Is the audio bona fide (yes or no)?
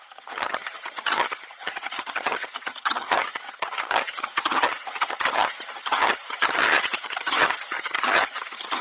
no